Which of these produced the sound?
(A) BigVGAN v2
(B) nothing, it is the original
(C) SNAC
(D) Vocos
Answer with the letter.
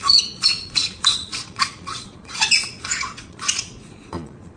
D